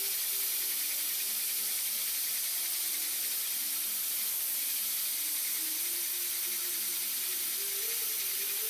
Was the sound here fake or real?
real